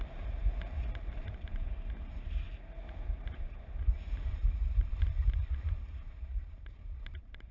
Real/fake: fake